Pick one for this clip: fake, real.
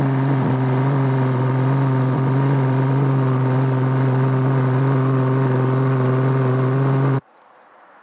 fake